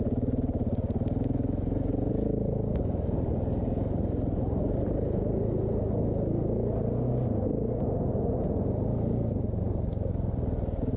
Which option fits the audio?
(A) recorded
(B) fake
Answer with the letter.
A